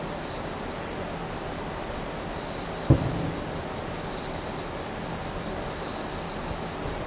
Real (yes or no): yes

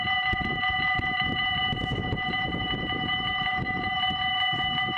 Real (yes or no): no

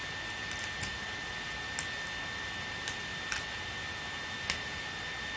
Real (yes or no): yes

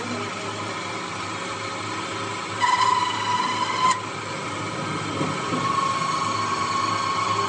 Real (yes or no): yes